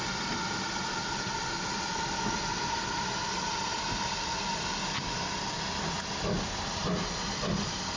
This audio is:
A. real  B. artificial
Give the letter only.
A